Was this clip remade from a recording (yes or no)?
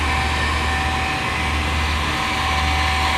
no